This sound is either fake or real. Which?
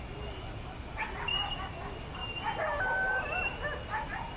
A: real